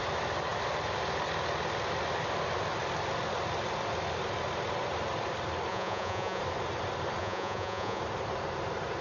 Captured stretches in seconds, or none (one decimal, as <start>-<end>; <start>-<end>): 0.0-5.7; 6.4-7.2; 8.0-9.0